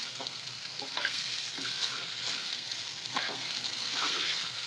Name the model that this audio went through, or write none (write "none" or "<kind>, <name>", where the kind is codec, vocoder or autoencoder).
codec, SNAC